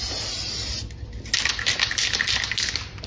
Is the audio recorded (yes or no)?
yes